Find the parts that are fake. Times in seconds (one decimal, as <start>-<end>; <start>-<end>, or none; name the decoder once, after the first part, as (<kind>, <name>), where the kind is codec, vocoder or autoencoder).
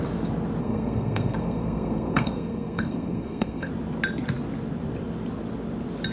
0.6-3.7 (codec, SNAC)